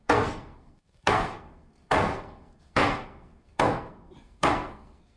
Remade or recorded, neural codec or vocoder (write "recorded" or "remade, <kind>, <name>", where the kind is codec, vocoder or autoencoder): remade, codec, SNAC